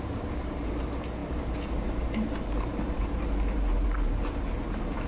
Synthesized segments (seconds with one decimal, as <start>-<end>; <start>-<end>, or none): 0.0-5.1